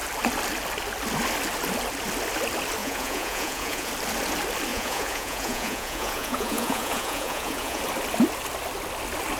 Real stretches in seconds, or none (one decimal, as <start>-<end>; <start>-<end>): 0.0-2.8; 3.9-4.7; 7.8-9.4